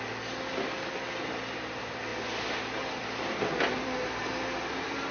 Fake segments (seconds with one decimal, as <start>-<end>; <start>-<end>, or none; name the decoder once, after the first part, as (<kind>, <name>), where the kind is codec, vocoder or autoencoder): 2.1-5.1 (vocoder, BigVGAN v2)